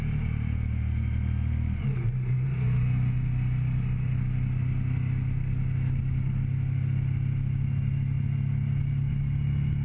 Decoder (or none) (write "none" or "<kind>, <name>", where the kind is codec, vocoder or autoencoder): none